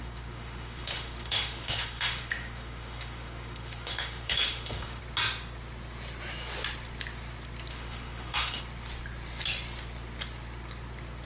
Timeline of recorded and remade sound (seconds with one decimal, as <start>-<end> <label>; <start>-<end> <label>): 0.0-5.0 remade; 5.0-7.7 recorded; 7.7-8.6 remade; 8.6-11.3 recorded